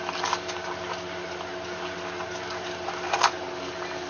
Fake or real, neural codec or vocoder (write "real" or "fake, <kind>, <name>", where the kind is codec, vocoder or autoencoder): real